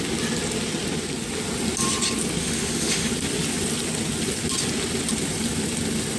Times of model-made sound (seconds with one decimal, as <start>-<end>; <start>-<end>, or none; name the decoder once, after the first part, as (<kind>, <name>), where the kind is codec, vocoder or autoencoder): 2.4-3.1 (autoencoder, DAC-VAE)